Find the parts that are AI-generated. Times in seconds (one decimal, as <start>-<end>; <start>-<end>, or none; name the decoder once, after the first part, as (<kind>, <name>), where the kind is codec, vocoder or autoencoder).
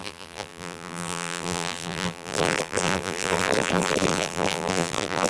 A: 0.0-5.3 (vocoder, BigVGAN v2)